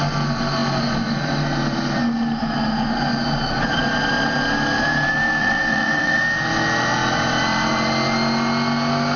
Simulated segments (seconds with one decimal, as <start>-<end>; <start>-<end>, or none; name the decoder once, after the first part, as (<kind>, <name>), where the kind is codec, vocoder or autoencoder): 5.4-6.2 (vocoder, WaveNeXt)